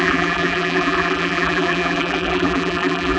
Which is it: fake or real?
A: fake